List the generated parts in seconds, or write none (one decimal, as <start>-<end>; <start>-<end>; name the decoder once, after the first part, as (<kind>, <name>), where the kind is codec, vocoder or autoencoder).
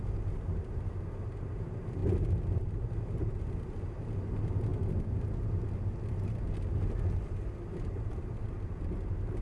none